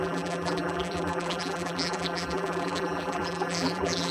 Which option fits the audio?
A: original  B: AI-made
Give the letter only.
B